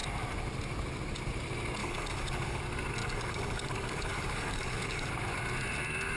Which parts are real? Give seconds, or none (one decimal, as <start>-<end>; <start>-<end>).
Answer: 0.0-1.8; 2.6-3.0; 5.1-6.2